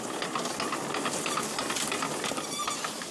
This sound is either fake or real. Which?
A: real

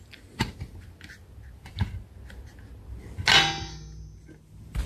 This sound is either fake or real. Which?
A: real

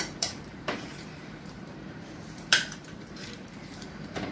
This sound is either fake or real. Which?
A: fake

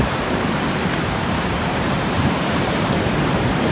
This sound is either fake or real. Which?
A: fake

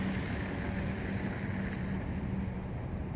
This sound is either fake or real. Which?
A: real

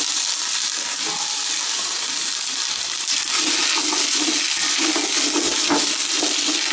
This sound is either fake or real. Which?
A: real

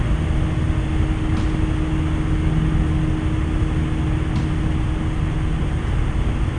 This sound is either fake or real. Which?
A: real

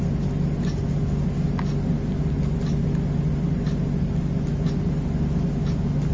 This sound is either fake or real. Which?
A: real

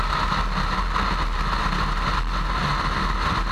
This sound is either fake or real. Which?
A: real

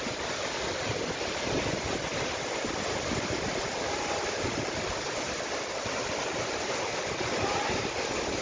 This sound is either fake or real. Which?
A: fake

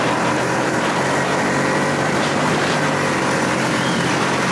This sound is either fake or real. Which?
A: fake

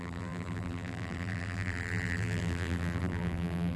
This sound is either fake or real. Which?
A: fake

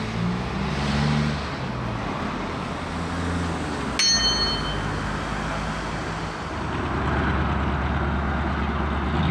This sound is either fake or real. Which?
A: real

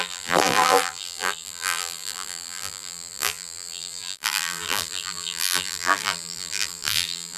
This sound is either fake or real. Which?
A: fake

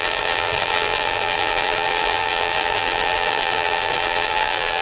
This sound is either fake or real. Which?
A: fake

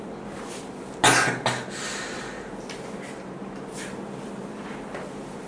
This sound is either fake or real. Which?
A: real